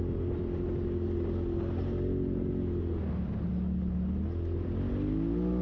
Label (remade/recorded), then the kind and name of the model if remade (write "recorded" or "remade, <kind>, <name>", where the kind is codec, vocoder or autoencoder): recorded